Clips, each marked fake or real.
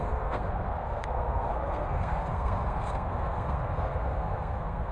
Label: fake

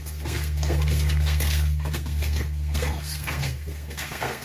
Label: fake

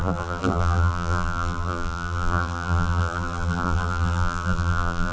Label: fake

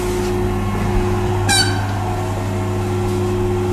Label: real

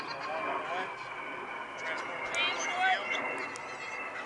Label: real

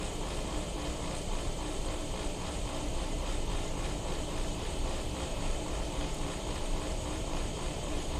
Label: fake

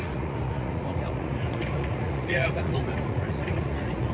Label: fake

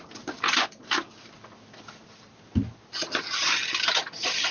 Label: real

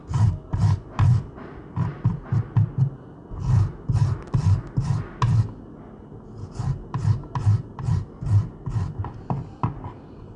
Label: real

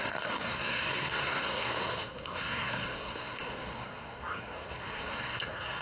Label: fake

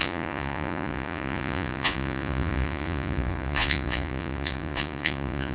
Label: fake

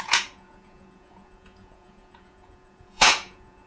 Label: fake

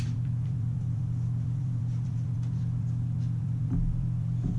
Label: fake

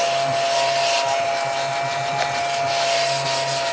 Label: real